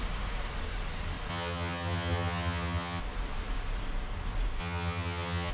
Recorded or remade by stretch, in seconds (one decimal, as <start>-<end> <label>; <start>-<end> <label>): 0.0-1.3 recorded; 1.3-3.0 remade; 3.0-4.6 recorded; 4.6-5.5 remade